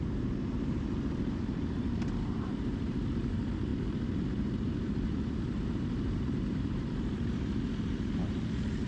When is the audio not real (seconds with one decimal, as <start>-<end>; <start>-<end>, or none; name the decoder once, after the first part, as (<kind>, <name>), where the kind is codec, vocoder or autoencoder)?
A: 0.0-8.9 (vocoder, BigVGAN v2)